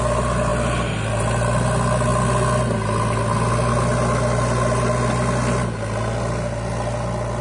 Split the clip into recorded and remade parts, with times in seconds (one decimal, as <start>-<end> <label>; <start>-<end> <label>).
0.0-7.4 recorded